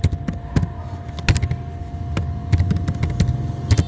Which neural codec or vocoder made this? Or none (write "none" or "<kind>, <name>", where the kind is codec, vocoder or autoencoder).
none